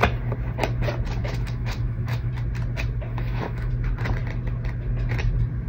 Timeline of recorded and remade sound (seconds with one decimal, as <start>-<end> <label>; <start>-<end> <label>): 0.0-1.2 recorded; 1.2-2.3 remade; 2.3-3.1 recorded; 3.1-3.7 remade; 3.7-5.7 recorded